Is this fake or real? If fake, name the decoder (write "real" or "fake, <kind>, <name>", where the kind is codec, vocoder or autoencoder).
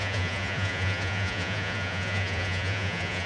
fake, vocoder, Vocos